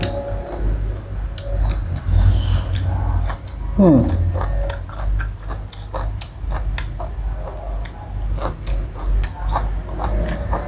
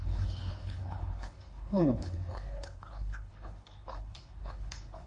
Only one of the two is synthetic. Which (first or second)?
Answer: second